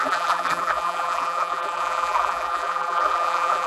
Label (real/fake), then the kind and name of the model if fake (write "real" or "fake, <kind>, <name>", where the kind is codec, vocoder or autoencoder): fake, vocoder, BigVGAN v2